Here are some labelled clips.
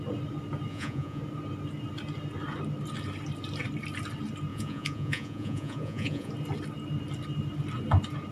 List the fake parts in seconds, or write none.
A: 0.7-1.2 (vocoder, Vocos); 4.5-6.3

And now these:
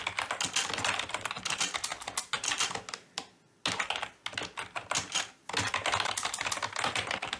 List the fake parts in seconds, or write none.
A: none

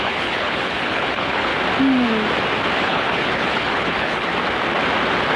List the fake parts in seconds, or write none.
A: 0.0-1.5 (codec, HILCodec); 2.8-4.3

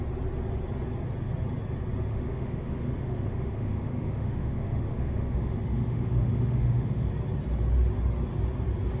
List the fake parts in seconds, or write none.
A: 2.1-7.1 (autoencoder, DAC-VAE)

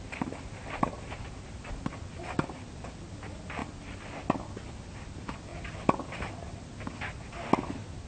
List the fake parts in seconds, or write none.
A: none

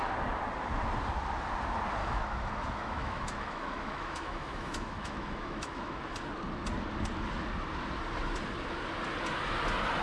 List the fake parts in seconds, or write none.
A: 2.0-6.0 (autoencoder, DAC-VAE)